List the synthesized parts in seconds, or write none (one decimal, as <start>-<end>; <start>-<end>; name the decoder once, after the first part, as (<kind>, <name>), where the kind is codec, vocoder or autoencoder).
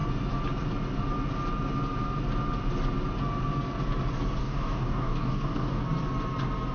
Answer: 4.4-5.8 (codec, DAC)